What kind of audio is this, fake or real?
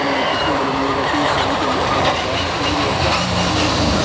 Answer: real